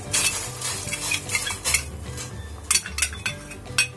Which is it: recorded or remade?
recorded